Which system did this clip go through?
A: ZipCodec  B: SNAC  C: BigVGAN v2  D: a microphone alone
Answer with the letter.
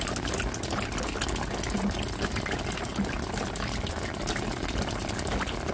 D